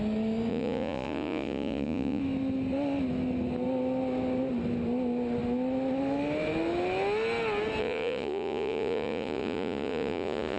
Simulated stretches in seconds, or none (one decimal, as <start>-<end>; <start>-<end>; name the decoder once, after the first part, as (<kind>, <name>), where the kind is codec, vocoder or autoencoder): 0.5-2.2 (vocoder, Vocos); 7.8-10.6